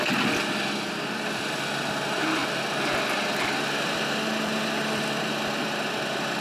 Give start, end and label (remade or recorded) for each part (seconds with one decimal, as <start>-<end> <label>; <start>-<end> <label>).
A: 0.0-6.4 recorded